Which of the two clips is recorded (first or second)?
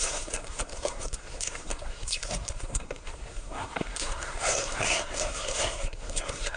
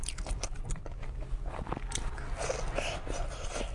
second